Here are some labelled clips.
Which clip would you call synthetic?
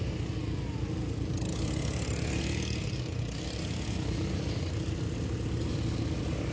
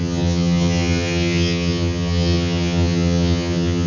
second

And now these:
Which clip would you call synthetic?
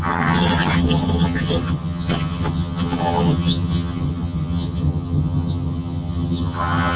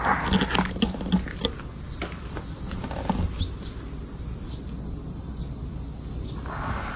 first